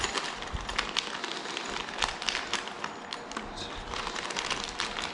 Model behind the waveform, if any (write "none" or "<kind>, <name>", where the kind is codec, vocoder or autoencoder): none